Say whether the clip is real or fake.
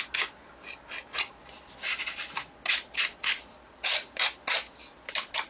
real